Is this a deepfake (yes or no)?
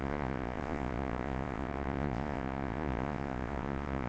yes